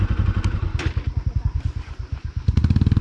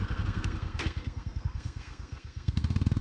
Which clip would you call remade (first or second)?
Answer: second